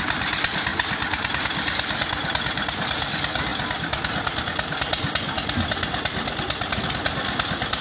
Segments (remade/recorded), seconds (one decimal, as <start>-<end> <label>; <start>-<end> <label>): 0.0-0.7 recorded; 0.7-1.3 remade; 1.3-7.8 recorded